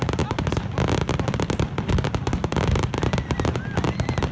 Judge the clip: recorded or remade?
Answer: recorded